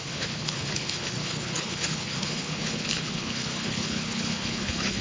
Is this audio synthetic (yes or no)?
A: yes